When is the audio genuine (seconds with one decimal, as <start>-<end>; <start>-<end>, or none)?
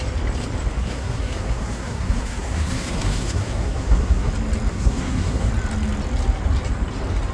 0.0-0.8; 4.3-4.7; 5.5-7.3